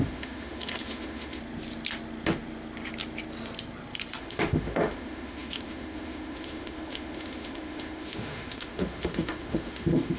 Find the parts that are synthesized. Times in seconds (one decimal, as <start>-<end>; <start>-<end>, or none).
0.0-1.4; 4.2-10.2